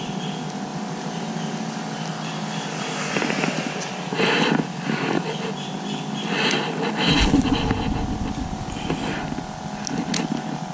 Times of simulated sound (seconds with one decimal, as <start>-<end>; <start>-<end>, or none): 0.7-1.3